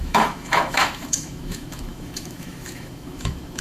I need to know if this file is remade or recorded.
remade